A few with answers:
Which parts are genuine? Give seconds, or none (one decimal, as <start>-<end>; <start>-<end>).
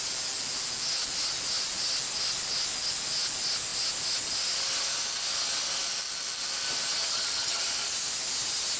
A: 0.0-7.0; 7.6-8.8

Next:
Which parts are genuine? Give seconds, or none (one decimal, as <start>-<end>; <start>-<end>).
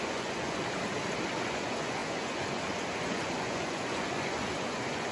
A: 0.6-1.3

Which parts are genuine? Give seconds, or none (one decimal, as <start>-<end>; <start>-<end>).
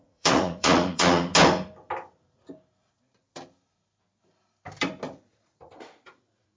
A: 1.3-5.3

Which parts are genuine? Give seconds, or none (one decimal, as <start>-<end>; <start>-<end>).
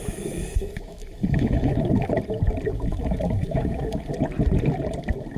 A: 2.1-2.9; 4.1-5.4